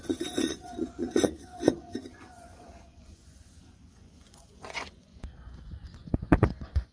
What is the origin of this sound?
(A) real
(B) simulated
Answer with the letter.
B